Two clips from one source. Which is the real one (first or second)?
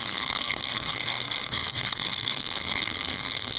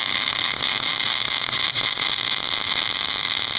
second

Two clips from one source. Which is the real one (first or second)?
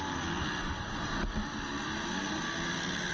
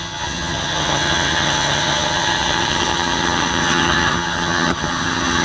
first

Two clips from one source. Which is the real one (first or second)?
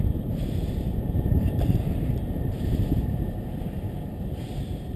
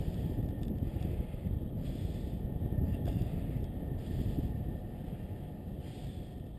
second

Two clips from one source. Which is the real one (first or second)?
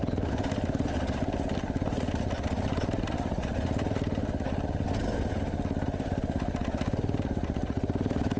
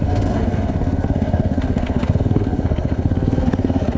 first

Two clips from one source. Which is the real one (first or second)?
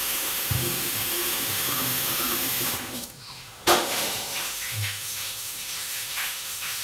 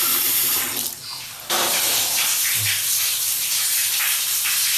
second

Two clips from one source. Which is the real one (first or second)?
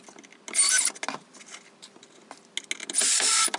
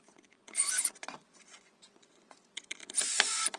first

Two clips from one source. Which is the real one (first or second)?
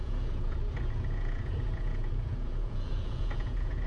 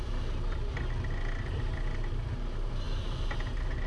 second